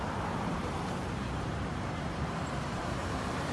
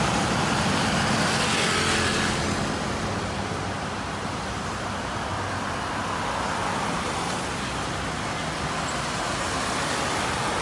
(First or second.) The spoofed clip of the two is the first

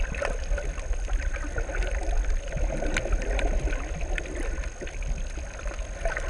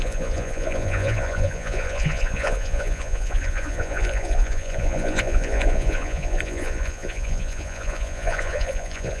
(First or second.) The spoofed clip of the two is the second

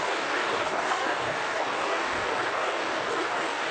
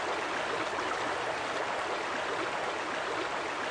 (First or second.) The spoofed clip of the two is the first